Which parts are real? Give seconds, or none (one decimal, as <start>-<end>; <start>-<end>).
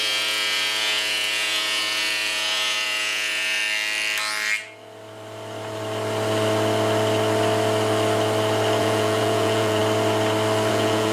3.6-8.8; 9.8-10.7